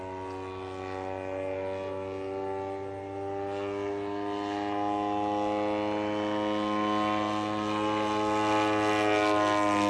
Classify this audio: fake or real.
real